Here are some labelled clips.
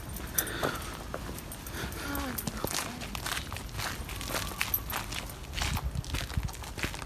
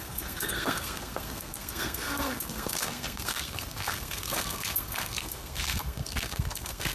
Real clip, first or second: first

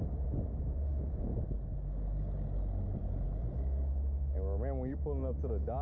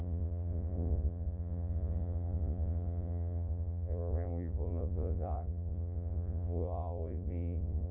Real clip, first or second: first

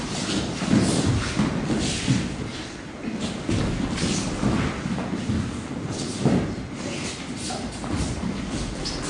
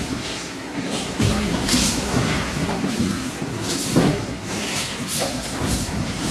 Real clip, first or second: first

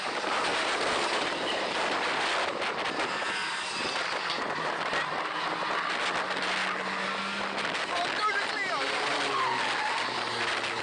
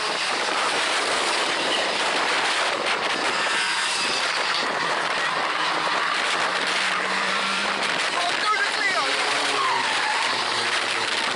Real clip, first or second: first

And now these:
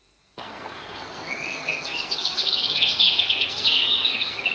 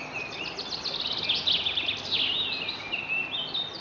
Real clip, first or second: second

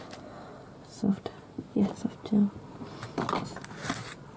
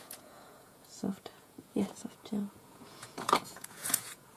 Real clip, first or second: first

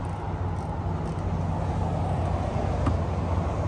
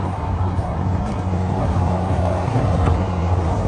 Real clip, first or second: first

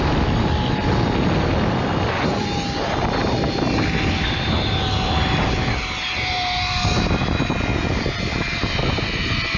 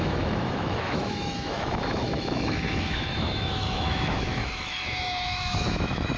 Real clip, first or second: first